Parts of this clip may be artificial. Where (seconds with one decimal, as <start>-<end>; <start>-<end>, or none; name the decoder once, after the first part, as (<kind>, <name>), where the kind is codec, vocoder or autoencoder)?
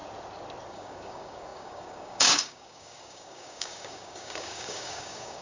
0.7-5.4 (codec, DAC)